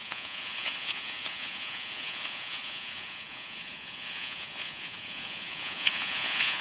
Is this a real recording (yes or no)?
no